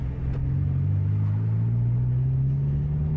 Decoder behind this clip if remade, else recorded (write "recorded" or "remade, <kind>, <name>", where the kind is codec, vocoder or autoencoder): recorded